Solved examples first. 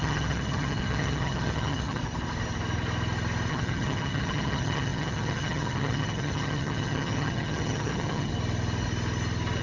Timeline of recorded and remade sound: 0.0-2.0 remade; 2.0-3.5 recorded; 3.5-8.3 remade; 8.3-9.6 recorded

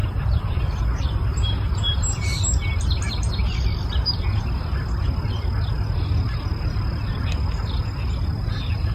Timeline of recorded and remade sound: 0.0-0.8 remade; 0.8-3.4 recorded; 3.4-4.0 remade; 4.0-8.9 recorded

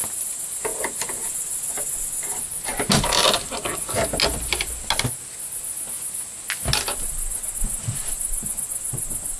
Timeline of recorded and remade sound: 0.0-9.4 recorded

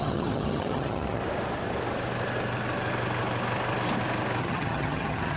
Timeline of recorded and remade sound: 0.0-1.2 remade; 1.2-4.4 recorded; 4.4-5.4 remade

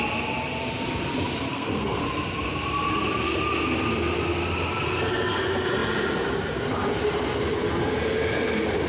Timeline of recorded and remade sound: 0.0-1.5 recorded; 1.5-2.0 remade; 2.0-8.9 recorded

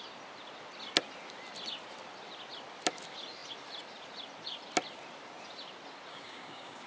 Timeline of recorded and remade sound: 0.0-6.1 recorded; 6.1-6.9 remade